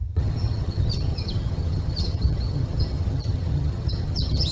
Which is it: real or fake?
fake